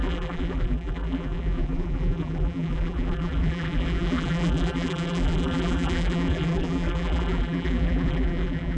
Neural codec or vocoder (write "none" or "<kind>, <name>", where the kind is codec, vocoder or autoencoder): vocoder, BigVGAN v2